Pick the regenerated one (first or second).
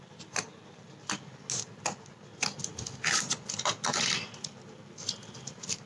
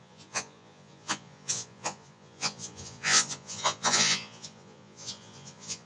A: second